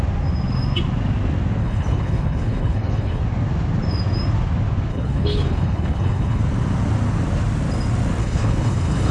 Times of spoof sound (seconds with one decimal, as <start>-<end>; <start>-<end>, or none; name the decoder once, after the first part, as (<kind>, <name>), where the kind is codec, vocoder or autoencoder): 1.6-3.2 (codec, HILCodec); 4.9-6.4; 8.2-9.1

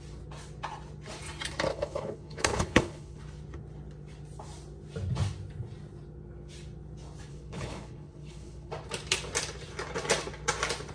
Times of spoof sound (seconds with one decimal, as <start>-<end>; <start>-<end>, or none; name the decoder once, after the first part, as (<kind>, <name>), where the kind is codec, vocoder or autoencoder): 1.7-3.2 (codec, HILCodec); 7.3-8.7

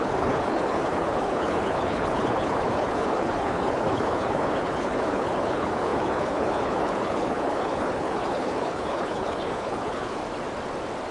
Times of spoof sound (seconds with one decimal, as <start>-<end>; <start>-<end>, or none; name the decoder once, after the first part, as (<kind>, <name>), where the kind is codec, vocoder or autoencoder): 0.0-10.2 (codec, HILCodec)

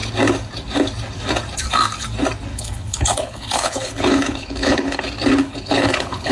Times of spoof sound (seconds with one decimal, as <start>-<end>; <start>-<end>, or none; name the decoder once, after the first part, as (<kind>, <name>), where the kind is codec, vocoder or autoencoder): 2.5-5.0 (codec, HILCodec); 5.4-6.3

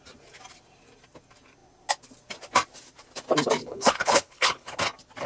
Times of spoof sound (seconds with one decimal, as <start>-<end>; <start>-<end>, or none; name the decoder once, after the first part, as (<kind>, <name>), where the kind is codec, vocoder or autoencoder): 3.6-4.8 (codec, HILCodec)